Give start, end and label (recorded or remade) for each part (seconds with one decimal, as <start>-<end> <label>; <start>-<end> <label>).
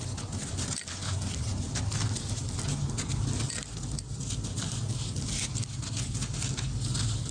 0.0-7.3 recorded